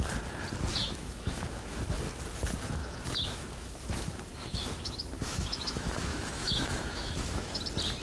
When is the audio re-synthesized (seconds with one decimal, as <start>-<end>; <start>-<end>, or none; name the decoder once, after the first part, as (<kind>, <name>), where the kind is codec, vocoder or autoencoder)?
0.8-1.8 (autoencoder, DAC-VAE); 2.8-7.6